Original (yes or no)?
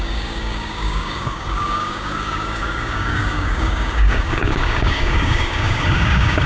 no